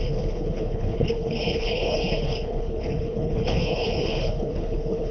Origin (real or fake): fake